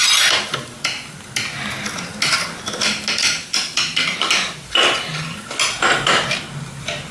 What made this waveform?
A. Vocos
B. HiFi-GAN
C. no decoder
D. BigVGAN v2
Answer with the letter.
C